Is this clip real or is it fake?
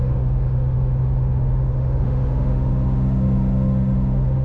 fake